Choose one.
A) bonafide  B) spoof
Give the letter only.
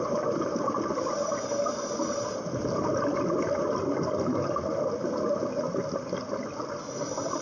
A